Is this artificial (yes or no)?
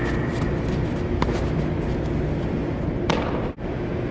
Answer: no